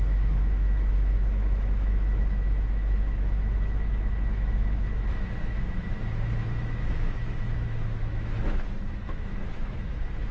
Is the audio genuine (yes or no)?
no